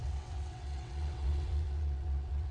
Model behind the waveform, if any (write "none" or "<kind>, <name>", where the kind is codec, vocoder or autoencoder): vocoder, WaveNeXt